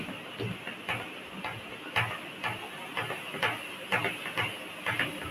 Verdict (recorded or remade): recorded